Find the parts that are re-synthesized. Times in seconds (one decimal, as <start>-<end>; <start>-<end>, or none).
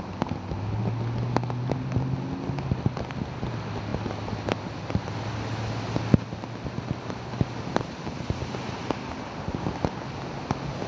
none